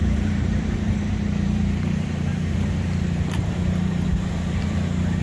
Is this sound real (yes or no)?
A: no